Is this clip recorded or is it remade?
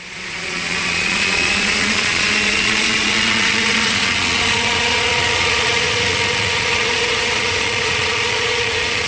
remade